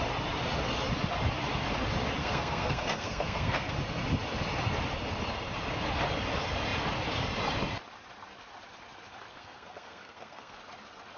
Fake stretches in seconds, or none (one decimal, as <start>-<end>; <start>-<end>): 2.2-3.7; 9.3-10.6